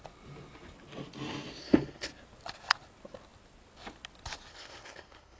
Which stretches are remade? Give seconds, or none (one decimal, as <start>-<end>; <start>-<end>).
1.6-2.1; 4.5-5.4

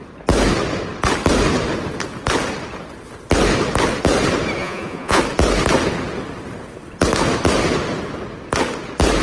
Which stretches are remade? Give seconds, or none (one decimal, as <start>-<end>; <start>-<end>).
4.6-5.2

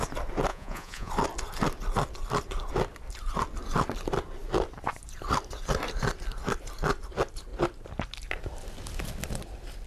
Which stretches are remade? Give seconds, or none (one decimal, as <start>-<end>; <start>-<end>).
0.5-1.1